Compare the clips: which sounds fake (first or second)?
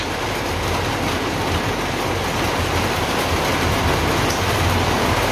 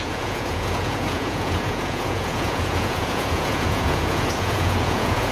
second